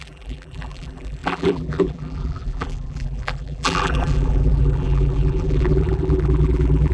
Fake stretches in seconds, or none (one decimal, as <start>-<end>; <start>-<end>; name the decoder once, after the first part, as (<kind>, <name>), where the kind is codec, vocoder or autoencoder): 0.0-6.9 (vocoder, BigVGAN v2)